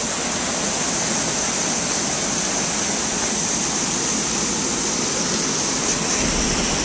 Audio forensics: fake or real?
real